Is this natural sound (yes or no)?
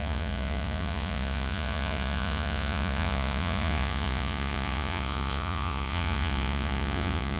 no